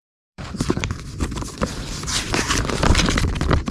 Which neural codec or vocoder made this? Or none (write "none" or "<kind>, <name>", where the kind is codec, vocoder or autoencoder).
vocoder, BigVGAN v2